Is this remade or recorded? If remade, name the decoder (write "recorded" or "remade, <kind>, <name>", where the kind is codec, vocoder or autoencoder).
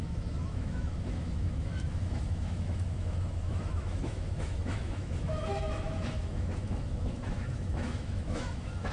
remade, autoencoder, DAC-VAE